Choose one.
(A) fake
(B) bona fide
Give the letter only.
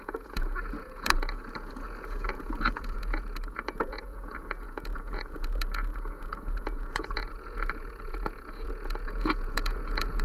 A